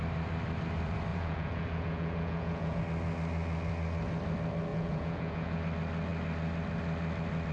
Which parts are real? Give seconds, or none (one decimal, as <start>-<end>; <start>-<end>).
0.0-1.1; 2.8-4.7; 5.6-7.5

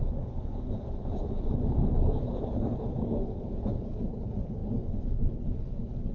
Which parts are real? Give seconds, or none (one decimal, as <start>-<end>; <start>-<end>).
none

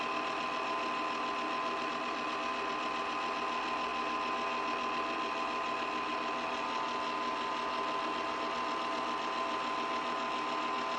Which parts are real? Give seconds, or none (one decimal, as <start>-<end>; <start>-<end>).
0.0-11.0